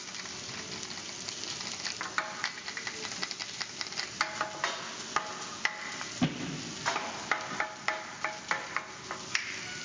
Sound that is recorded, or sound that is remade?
recorded